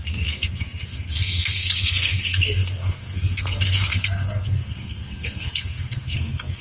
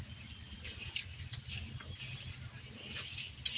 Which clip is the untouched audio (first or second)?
second